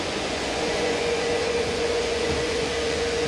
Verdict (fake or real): fake